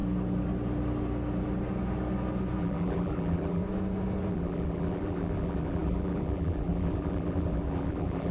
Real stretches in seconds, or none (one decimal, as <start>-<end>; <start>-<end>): 0.0-2.6; 3.6-4.3